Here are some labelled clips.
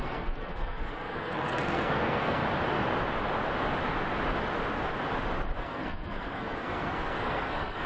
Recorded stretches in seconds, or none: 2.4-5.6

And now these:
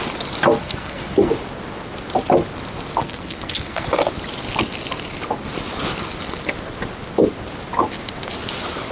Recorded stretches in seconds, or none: 0.0-0.6; 1.3-3.0; 3.9-8.9